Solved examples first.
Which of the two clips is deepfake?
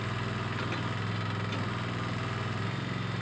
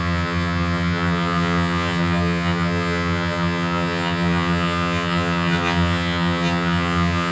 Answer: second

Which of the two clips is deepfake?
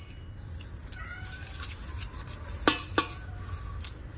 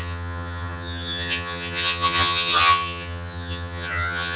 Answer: second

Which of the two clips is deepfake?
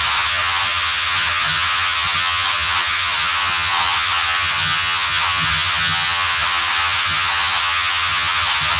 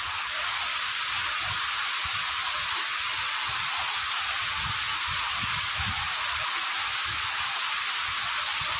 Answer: first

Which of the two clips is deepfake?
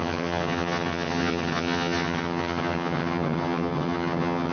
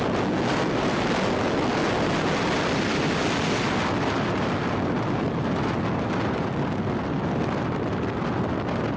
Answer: first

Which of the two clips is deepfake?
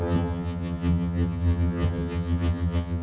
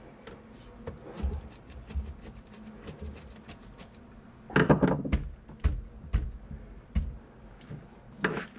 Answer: first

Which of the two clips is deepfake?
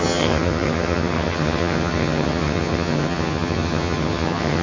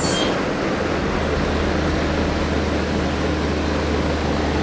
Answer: first